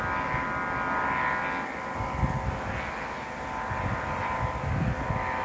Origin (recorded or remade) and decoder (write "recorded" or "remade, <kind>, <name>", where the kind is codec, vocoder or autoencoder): recorded